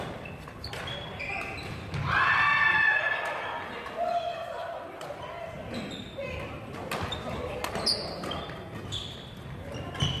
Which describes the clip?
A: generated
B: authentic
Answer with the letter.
B